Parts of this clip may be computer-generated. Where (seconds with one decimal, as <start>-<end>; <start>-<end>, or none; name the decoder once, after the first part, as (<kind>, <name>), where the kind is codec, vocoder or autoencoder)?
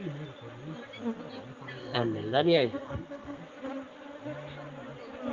1.8-3.4 (codec, SNAC)